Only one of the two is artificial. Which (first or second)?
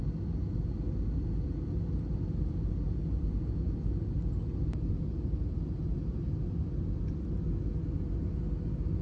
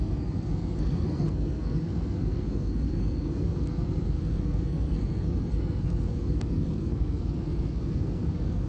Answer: second